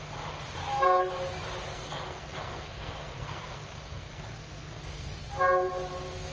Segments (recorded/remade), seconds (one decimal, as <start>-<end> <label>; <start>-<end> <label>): 0.0-0.6 recorded; 0.6-1.1 remade; 1.1-1.7 recorded; 1.7-5.3 remade; 5.3-6.3 recorded